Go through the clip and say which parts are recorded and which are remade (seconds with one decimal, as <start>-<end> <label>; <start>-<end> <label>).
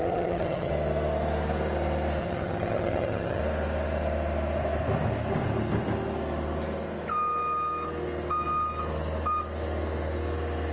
0.0-0.7 remade; 0.7-2.2 recorded; 2.2-3.4 remade; 3.4-10.7 recorded